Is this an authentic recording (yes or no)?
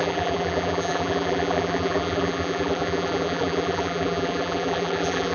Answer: no